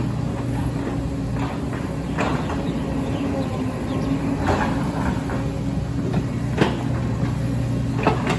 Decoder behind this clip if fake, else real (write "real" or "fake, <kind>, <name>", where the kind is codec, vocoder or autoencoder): real